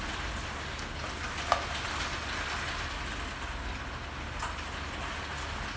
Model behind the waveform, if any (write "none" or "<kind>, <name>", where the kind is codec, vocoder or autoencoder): none